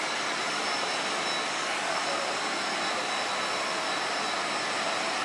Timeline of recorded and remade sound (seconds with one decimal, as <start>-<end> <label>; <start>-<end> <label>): 0.0-0.4 remade; 0.4-1.5 recorded; 1.5-2.0 remade; 2.0-5.2 recorded